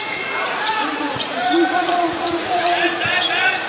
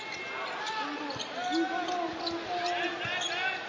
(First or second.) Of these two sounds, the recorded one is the second